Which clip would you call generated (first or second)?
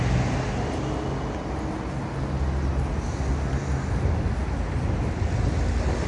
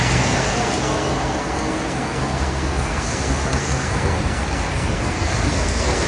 second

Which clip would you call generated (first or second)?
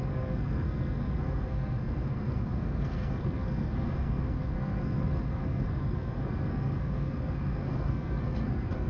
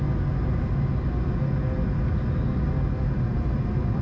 first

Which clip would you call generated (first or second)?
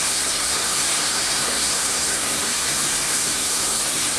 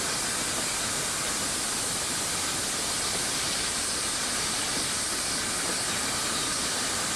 first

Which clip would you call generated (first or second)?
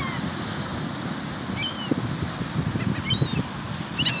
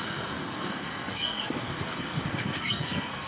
second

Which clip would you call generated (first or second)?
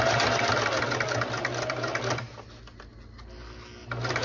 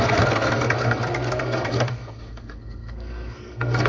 second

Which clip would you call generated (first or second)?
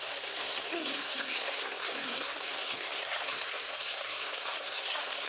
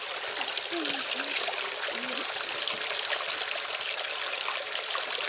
first